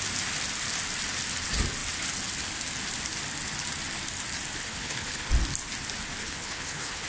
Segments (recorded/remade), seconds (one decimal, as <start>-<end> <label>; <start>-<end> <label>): 0.0-4.6 recorded; 4.6-5.3 remade; 5.3-6.2 recorded; 6.2-7.1 remade